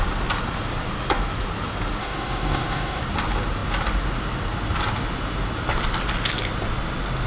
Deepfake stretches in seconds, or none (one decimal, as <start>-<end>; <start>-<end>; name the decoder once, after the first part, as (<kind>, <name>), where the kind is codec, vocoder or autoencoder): 2.0-3.0 (autoencoder, DAC-VAE)